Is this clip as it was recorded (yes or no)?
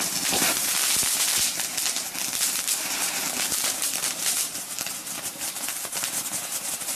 no